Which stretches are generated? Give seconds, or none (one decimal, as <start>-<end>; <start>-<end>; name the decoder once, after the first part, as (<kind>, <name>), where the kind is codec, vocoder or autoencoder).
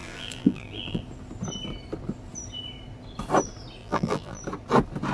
0.0-1.0 (vocoder, BigVGAN v2); 3.8-4.4